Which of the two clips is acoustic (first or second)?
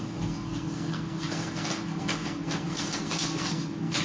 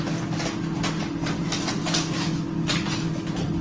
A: second